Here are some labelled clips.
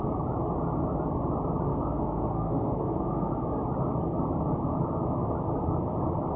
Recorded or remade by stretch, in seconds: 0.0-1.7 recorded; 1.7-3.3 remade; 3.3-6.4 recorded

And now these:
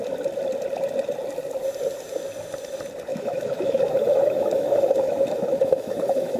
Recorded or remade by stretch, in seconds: 0.0-3.1 recorded; 3.1-6.4 remade

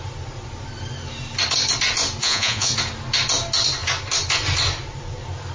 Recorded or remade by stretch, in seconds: 0.0-2.2 recorded; 2.2-2.7 remade; 2.7-5.5 recorded

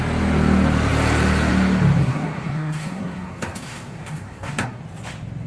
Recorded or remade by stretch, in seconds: 0.0-2.0 recorded; 2.0-4.8 remade; 4.8-5.5 recorded

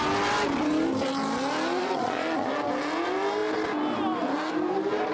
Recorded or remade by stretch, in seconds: 0.0-1.8 recorded; 1.8-2.5 remade; 2.5-5.1 recorded

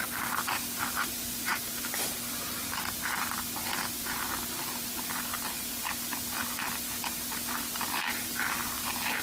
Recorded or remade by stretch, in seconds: 0.0-9.2 recorded

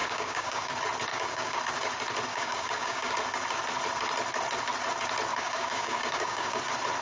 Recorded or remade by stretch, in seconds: 0.0-0.7 remade; 0.7-1.1 recorded; 1.1-1.6 remade; 1.6-2.3 recorded; 2.3-3.1 remade; 3.1-5.3 recorded; 5.3-6.6 remade; 6.6-7.0 recorded